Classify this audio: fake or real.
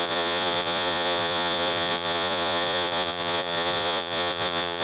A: fake